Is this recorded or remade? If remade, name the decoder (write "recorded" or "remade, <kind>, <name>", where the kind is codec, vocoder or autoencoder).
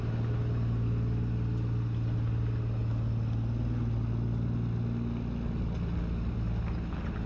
recorded